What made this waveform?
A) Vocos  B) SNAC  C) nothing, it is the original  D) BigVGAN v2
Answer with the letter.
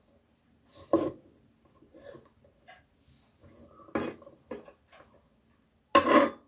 C